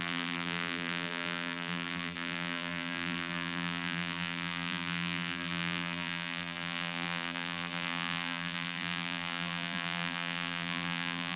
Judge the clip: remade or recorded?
remade